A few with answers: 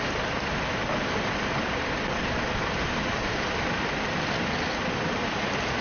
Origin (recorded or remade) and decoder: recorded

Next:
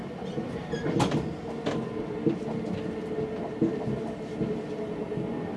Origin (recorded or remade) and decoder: recorded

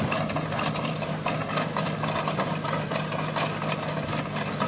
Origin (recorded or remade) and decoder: recorded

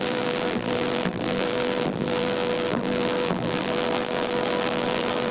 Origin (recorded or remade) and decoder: remade, vocoder, BigVGAN v2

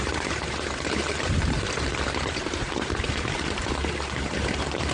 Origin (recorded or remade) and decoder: remade, vocoder, BigVGAN v2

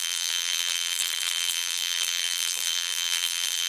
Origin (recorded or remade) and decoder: remade, vocoder, BigVGAN v2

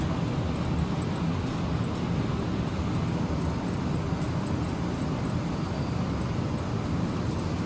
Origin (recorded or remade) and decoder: recorded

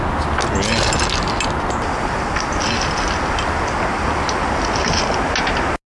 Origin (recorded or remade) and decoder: recorded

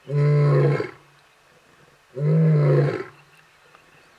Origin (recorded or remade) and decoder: recorded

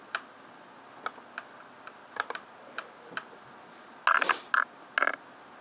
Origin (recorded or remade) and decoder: recorded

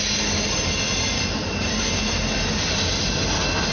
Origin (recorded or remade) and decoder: recorded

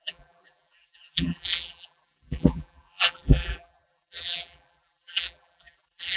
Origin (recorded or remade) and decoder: remade, vocoder, BigVGAN v2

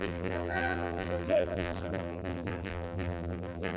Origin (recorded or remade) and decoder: remade, vocoder, BigVGAN v2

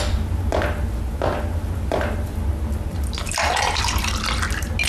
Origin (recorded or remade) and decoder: recorded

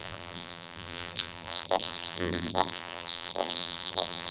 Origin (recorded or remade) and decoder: remade, vocoder, BigVGAN v2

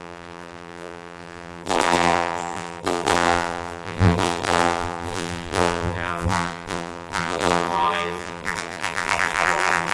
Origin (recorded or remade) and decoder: remade, vocoder, BigVGAN v2